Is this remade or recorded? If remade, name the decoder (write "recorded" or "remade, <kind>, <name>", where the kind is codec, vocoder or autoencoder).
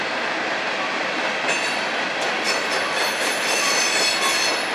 recorded